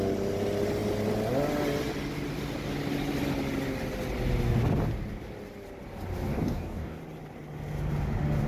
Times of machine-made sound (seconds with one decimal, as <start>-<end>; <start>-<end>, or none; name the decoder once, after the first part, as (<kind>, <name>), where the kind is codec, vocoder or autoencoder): 6.3-7.0 (codec, DAC)